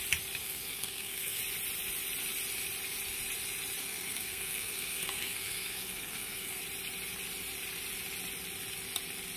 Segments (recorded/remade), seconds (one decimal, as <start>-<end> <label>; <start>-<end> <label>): 0.0-0.4 recorded; 0.4-1.4 remade; 1.4-3.8 recorded; 3.8-6.6 remade; 6.6-9.4 recorded